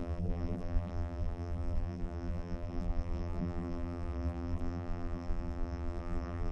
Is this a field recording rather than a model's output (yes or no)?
no